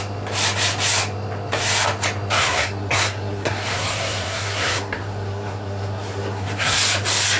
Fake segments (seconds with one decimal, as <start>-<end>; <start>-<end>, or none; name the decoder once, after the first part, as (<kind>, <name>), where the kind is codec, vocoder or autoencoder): 2.4-6.8 (codec, SNAC)